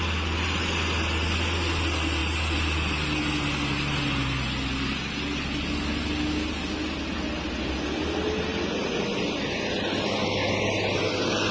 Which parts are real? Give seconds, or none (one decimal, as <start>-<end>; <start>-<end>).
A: 0.0-11.5